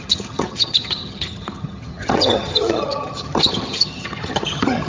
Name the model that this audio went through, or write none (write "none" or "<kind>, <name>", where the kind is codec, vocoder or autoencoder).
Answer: vocoder, HiFi-GAN